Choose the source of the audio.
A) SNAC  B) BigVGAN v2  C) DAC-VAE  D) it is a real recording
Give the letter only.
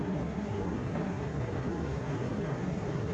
A